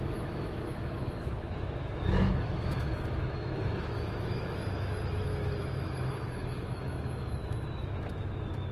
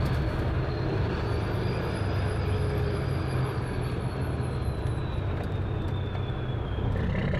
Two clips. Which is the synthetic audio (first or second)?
first